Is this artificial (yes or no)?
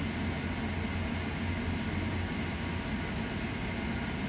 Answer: no